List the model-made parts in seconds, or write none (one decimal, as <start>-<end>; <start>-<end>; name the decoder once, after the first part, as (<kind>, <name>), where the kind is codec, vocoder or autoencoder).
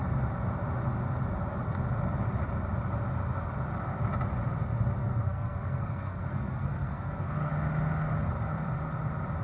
5.0-7.5 (codec, SNAC)